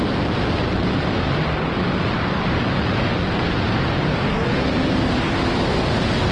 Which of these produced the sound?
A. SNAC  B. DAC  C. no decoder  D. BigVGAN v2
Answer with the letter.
C